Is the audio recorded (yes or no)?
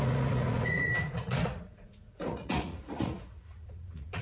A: no